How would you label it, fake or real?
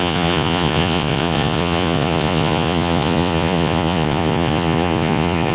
fake